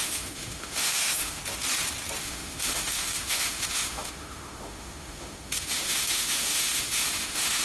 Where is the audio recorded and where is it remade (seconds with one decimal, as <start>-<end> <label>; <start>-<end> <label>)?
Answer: 0.0-1.4 remade; 1.4-2.2 recorded; 2.2-7.6 remade